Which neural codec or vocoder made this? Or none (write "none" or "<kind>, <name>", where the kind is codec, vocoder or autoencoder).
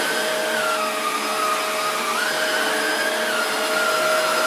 none